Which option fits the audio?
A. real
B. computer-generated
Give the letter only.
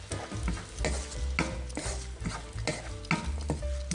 A